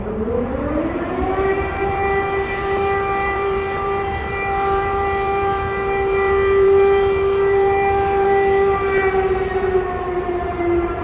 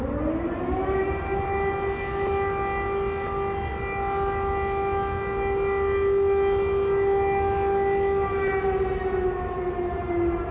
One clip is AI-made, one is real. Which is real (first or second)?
second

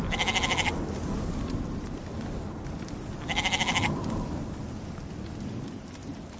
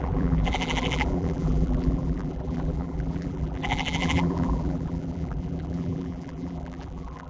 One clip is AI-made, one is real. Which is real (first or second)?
first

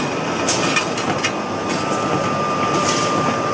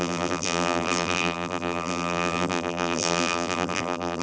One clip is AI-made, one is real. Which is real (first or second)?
first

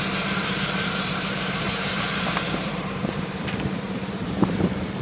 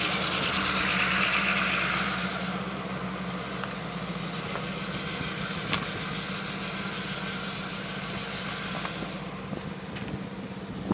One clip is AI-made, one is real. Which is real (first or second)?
second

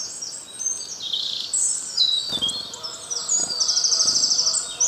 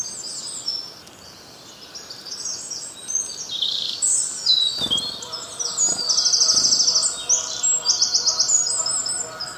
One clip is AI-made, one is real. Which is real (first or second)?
second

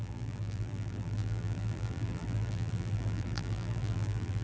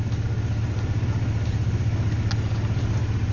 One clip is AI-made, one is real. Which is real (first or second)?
second